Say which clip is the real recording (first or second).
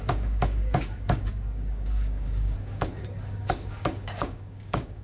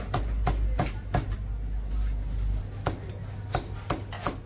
second